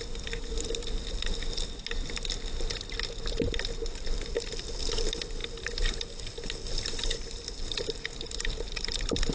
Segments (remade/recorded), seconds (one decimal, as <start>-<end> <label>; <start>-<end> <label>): 0.0-9.3 recorded

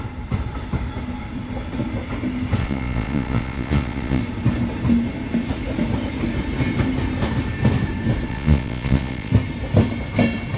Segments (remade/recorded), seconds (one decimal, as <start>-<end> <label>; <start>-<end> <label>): 0.0-2.6 recorded; 2.6-4.2 remade; 4.2-8.3 recorded; 8.3-9.3 remade; 9.3-10.6 recorded